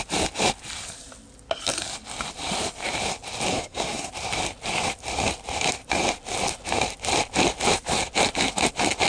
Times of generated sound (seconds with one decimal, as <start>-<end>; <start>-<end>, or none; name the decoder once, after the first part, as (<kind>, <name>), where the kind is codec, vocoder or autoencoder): 3.5-4.1 (codec, SNAC)